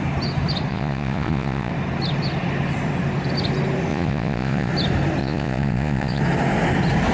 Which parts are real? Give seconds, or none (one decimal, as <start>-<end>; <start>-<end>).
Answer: 0.0-0.7; 1.7-3.9; 4.7-5.2; 6.2-7.1